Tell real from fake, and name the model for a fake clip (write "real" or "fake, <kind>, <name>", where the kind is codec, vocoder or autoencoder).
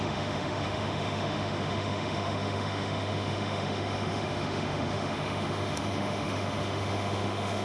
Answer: fake, autoencoder, DAC-VAE